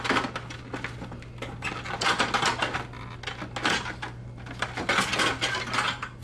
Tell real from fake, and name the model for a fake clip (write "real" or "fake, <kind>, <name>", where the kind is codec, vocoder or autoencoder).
real